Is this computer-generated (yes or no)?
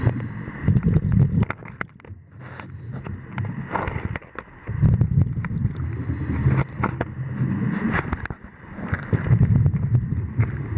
no